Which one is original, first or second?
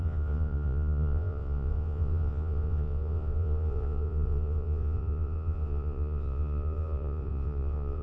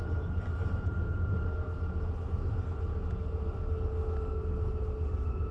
second